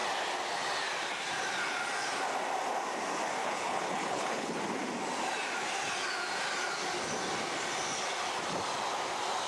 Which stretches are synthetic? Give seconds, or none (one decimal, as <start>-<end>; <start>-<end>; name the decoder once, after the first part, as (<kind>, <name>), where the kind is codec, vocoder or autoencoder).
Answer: 3.4-4.6 (codec, HILCodec)